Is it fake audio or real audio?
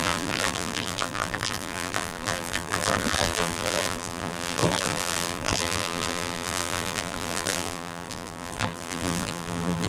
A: fake